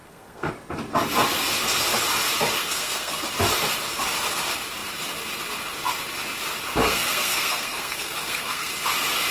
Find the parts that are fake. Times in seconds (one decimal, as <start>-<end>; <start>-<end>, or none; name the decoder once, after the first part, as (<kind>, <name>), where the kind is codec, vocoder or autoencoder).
0.0-0.5 (codec, SNAC); 2.6-3.1; 6.8-8.7